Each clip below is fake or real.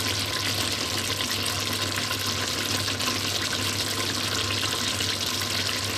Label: real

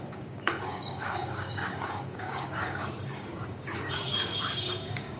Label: fake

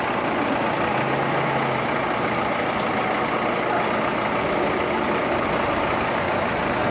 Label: real